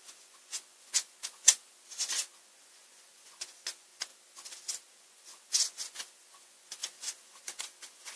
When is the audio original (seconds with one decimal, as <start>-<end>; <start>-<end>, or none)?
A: 4.1-5.0